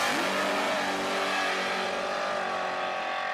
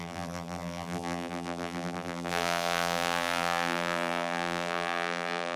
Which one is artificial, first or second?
second